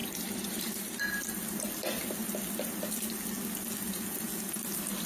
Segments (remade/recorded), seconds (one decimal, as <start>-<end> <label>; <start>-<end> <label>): 0.0-1.0 remade; 1.0-5.1 recorded